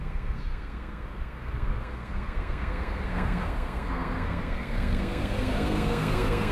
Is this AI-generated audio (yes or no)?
yes